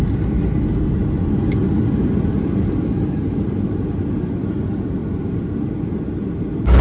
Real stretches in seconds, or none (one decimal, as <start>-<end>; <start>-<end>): 0.0-5.0; 5.9-6.8